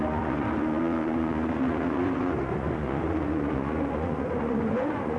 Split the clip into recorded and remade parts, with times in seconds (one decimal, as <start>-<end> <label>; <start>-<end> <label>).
0.0-5.2 remade